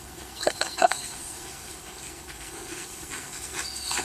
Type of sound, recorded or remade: remade